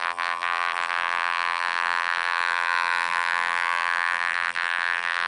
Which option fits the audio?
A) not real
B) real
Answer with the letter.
A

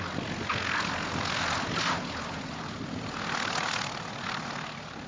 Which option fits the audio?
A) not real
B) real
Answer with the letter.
B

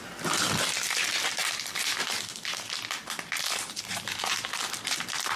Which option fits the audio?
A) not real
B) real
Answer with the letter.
B